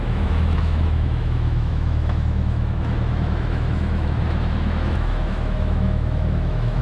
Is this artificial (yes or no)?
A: yes